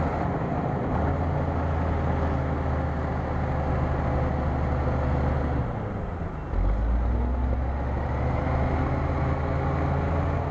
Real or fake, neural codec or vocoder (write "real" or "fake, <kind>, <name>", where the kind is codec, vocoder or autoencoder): real